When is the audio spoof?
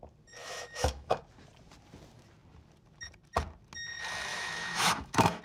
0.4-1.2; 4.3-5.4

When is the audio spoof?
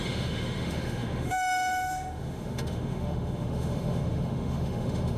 0.0-5.2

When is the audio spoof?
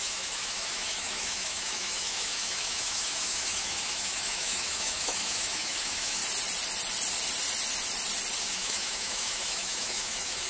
0.0-6.2; 8.4-10.5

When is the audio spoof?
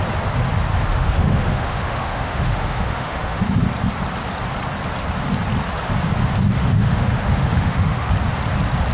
0.7-3.4; 6.6-8.1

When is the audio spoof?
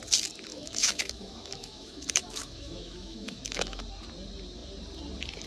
0.5-3.8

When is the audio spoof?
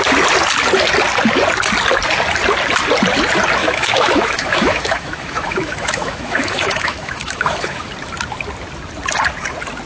3.6-7.9